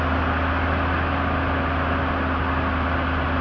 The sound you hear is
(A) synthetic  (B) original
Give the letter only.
B